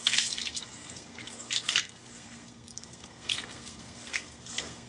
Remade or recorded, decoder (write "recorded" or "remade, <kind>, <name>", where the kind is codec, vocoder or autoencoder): remade, codec, SNAC